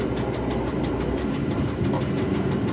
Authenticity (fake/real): real